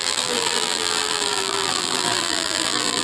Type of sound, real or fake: fake